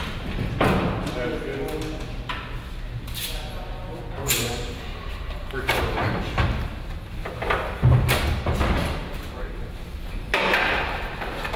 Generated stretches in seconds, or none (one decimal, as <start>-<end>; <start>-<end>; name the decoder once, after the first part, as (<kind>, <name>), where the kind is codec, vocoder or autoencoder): 4.2-5.8 (vocoder, BigVGAN v2); 9.0-9.6